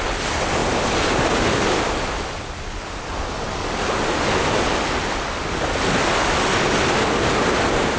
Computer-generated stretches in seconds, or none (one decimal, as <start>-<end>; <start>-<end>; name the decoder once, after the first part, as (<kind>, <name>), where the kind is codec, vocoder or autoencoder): none